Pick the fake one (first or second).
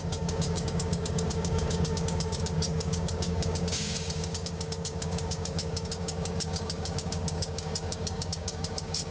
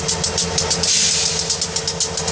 first